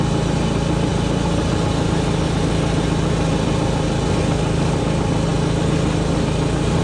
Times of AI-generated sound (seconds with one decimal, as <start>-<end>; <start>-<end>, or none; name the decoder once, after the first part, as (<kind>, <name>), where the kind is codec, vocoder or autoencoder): none